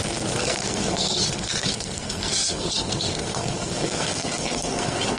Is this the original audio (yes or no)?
no